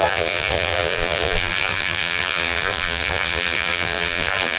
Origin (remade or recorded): remade